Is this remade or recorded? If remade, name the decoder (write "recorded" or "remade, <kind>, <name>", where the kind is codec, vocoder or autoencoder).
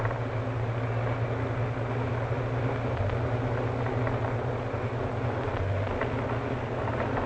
recorded